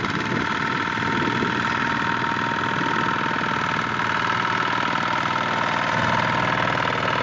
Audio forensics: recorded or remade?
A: recorded